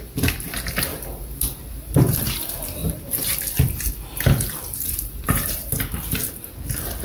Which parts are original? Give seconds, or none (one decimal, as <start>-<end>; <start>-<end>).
0.0-0.9; 2.4-2.8; 3.4-4.7; 5.8-7.0